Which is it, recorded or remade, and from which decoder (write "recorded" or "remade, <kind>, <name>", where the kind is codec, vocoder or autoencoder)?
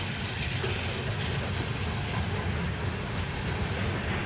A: recorded